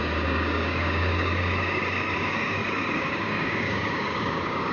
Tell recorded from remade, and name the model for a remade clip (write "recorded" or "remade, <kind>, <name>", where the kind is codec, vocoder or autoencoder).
remade, codec, DAC